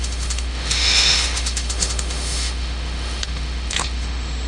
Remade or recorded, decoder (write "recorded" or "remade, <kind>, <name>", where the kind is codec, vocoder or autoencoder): remade, autoencoder, DAC-VAE